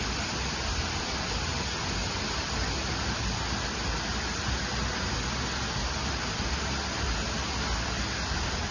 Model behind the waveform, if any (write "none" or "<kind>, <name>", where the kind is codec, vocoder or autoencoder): none